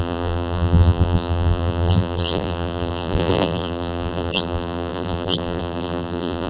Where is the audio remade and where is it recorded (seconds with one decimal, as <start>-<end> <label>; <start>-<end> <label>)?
0.0-6.5 remade